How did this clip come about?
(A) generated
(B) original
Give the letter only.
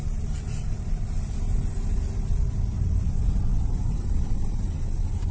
B